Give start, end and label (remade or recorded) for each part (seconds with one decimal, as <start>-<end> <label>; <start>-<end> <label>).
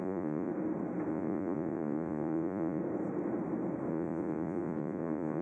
0.0-0.5 remade; 0.5-1.1 recorded; 1.1-2.8 remade; 2.8-3.9 recorded; 3.9-5.4 remade